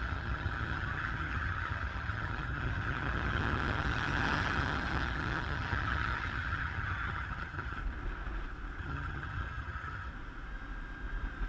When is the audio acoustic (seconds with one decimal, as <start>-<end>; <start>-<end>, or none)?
7.8-8.8; 10.1-11.5